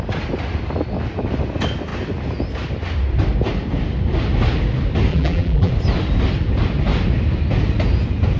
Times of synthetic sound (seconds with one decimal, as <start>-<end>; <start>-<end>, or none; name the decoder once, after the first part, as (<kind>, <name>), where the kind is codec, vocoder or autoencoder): 5.1-5.7 (vocoder, BigVGAN v2)